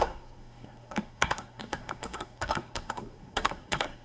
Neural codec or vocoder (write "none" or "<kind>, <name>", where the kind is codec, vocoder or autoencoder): codec, SNAC